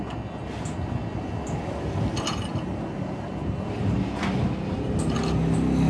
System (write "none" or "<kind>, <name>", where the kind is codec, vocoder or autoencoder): none